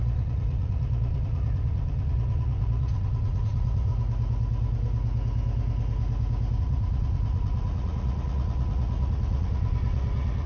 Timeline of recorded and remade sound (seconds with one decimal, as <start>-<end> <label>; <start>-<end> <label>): 0.0-3.9 remade; 3.9-6.6 recorded; 6.6-10.5 remade